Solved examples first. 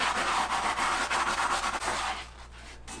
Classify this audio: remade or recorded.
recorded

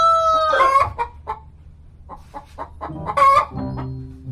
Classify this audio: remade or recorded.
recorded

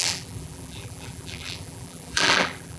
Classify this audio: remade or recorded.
remade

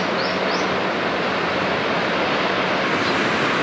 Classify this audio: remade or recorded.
recorded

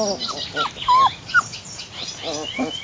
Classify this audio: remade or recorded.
recorded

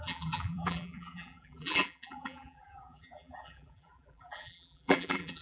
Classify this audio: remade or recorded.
remade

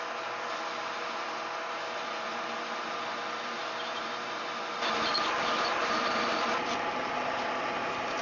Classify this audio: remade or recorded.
recorded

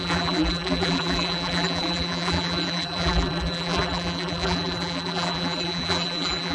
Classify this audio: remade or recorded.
remade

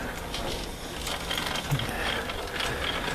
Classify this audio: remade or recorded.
recorded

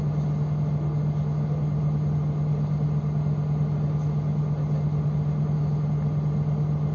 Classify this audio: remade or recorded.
recorded